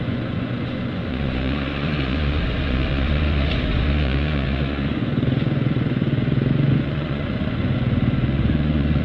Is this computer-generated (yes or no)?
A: yes